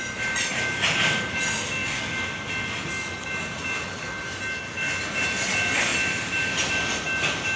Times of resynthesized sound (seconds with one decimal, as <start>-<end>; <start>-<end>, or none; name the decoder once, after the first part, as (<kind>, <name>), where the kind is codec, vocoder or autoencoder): none